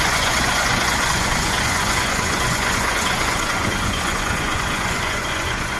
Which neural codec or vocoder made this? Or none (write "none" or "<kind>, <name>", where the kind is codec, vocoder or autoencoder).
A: vocoder, Vocos